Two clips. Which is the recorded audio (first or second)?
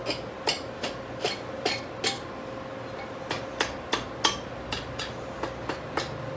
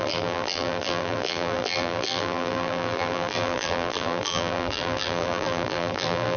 first